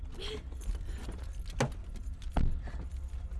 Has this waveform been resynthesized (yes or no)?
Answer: no